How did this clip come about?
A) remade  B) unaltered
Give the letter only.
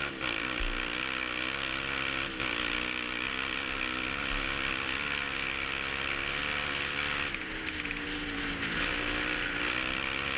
B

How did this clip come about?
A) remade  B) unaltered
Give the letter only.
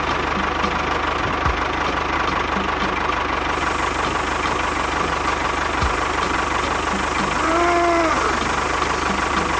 B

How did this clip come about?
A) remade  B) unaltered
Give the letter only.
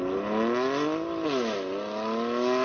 B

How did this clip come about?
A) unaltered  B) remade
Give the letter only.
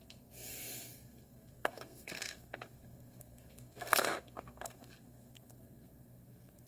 B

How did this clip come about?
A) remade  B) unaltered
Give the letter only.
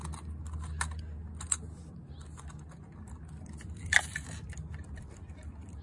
B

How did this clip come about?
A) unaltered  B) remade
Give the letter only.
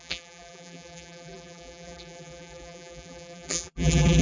B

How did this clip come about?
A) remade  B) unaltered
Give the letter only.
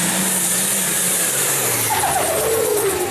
B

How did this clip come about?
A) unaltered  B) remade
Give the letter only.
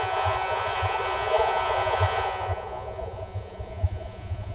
B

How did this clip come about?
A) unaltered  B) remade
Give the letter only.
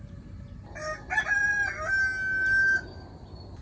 A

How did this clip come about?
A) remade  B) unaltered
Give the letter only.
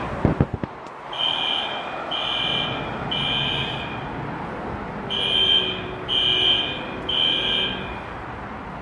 B